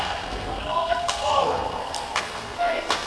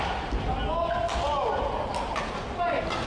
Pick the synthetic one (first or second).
first